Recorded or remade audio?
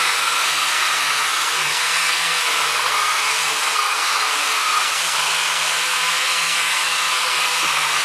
remade